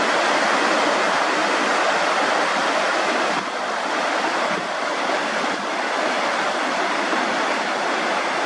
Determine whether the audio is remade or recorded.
recorded